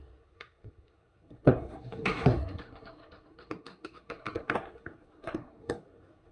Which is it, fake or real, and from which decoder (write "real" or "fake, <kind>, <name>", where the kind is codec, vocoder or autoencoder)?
fake, codec, SNAC